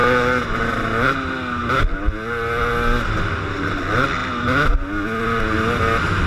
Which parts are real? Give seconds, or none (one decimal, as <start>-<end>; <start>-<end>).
0.0-6.3